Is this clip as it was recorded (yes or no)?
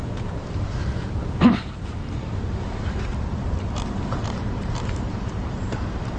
no